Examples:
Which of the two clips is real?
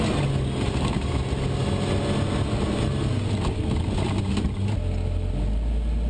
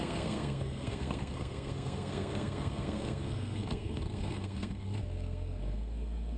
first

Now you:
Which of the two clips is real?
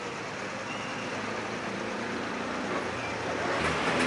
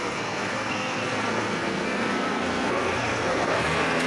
first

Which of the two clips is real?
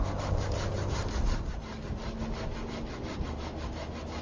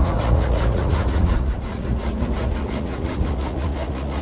first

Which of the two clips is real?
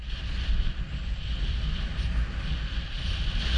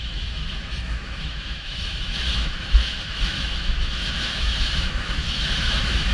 first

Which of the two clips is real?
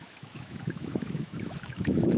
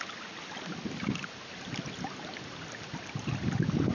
second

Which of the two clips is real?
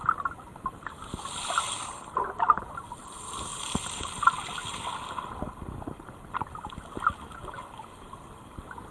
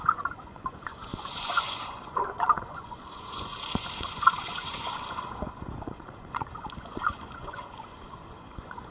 first